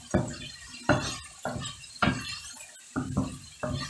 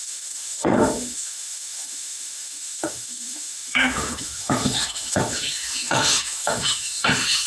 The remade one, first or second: second